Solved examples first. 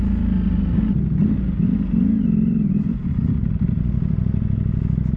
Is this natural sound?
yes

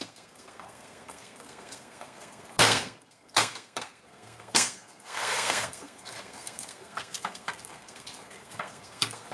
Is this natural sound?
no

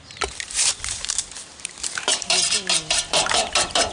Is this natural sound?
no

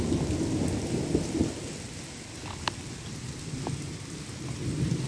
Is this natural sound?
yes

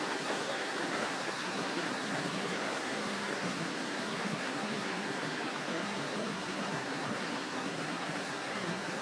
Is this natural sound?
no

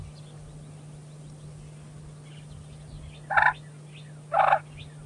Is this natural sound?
yes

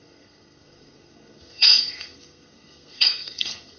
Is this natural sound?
no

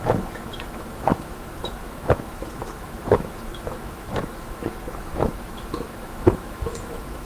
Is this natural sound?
no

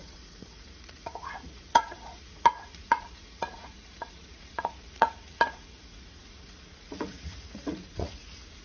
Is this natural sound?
no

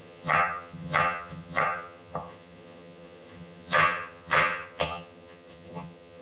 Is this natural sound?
no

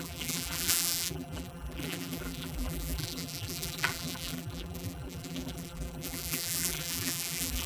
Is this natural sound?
no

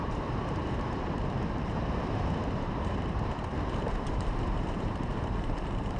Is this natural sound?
no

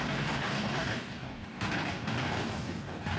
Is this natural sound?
no